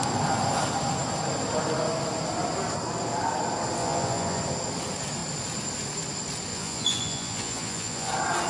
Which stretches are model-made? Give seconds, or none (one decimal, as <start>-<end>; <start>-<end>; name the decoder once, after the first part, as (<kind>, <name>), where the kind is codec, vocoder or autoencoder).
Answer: 3.8-4.4 (vocoder, Vocos); 6.5-8.1